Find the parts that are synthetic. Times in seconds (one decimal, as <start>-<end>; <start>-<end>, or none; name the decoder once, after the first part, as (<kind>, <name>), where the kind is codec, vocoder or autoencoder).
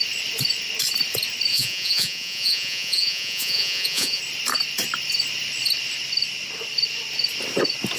1.5-4.2 (vocoder, Vocos)